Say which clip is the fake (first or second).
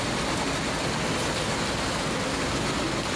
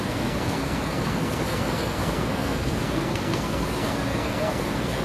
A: second